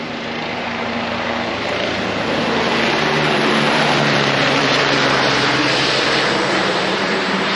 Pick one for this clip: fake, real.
fake